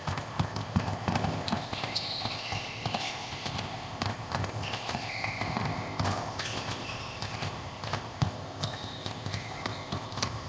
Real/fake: fake